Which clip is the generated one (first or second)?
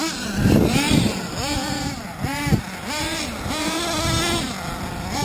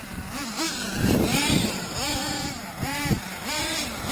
second